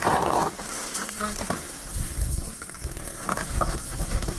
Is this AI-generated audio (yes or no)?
yes